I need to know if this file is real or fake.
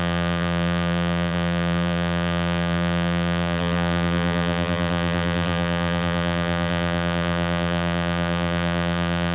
fake